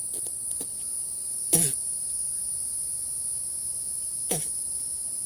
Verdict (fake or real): real